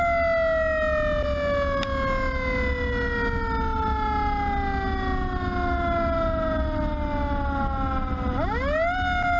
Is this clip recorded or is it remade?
recorded